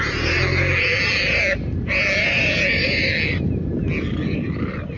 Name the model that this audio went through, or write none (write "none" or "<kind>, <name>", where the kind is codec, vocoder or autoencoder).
none